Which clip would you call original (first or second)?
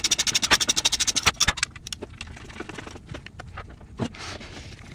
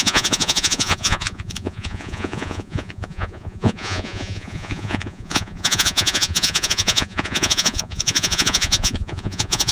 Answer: first